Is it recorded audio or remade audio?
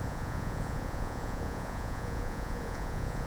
remade